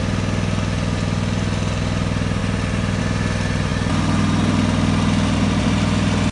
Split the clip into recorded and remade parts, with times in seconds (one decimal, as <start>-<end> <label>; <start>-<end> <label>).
0.0-6.3 recorded